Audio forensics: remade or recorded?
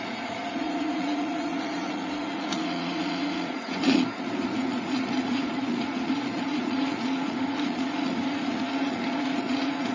remade